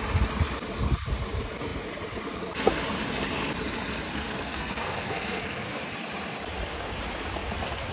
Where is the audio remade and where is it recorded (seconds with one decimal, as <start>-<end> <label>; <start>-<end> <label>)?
0.0-4.1 recorded; 4.1-5.8 remade; 5.8-7.9 recorded